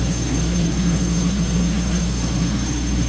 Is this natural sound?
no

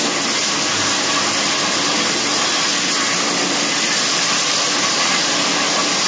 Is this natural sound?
yes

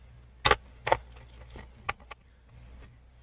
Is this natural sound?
yes